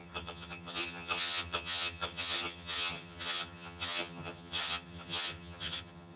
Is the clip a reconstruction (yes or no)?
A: yes